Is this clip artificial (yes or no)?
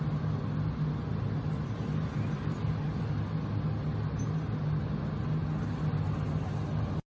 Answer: no